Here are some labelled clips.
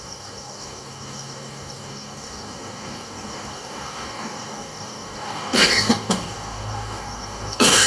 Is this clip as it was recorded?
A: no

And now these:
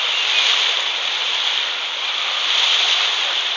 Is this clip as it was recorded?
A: yes